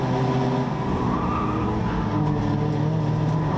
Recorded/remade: recorded